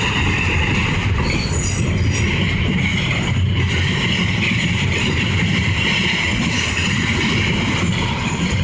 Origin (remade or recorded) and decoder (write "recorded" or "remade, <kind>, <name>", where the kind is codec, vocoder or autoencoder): recorded